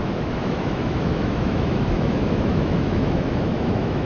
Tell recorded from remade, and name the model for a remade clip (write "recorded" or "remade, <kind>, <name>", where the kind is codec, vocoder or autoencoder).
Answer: remade, autoencoder, DAC-VAE